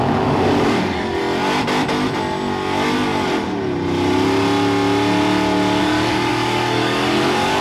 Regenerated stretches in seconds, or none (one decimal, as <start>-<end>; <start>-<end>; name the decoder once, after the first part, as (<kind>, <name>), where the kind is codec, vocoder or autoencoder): 0.0-1.2 (codec, DAC); 5.8-7.6